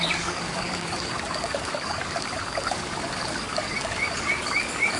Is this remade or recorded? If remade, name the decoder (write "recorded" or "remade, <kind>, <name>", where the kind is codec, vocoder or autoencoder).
remade, codec, DAC